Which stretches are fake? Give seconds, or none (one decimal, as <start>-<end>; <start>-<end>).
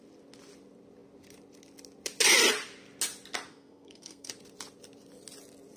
3.5-4.3